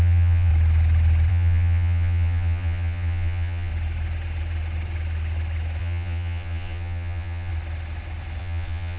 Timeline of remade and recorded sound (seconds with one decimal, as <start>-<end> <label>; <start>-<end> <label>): 0.0-0.5 remade; 0.5-1.3 recorded; 1.3-3.7 remade; 3.7-5.8 recorded; 5.8-7.5 remade; 7.5-8.4 recorded; 8.4-9.0 remade